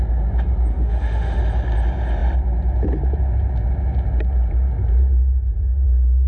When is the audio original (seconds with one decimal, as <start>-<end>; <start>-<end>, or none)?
0.0-0.7; 1.4-6.3